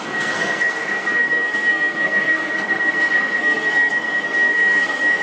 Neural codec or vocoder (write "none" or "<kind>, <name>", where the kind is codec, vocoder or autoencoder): codec, SNAC